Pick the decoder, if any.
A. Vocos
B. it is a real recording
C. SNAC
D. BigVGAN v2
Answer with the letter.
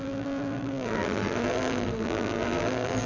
D